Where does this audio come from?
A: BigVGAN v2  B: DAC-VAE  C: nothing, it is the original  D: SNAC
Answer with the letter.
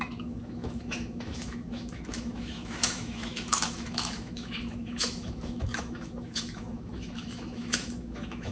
B